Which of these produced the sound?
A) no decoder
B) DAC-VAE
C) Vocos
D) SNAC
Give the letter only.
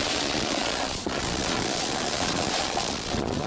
C